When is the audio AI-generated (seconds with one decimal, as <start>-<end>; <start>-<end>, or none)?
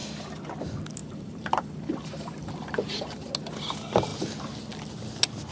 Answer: 1.0-3.3